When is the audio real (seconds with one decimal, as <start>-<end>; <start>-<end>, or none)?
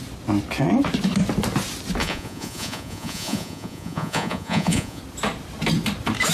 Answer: 0.0-2.0; 5.0-6.3